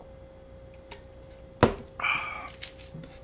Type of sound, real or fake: real